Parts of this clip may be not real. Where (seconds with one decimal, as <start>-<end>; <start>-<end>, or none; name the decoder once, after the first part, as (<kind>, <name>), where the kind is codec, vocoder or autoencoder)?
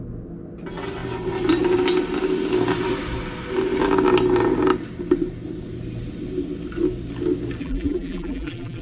7.6-8.8 (vocoder, BigVGAN v2)